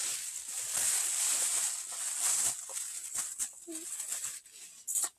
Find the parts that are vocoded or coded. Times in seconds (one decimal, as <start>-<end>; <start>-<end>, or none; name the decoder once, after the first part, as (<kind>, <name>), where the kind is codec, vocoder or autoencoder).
0.0-0.9 (vocoder, BigVGAN v2)